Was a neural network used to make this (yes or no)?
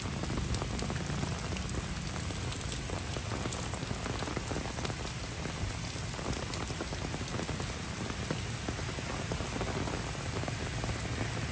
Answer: no